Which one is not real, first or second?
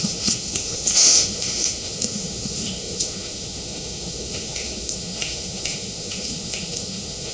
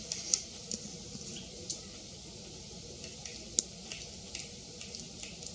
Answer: first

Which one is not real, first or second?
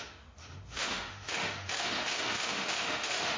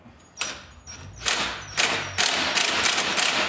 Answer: first